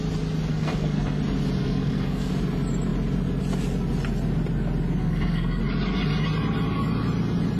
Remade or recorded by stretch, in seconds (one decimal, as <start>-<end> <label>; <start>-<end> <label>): 0.0-0.5 recorded; 0.5-1.2 remade; 1.2-1.6 recorded; 1.6-2.3 remade; 2.3-5.0 recorded; 5.0-5.6 remade; 5.6-7.6 recorded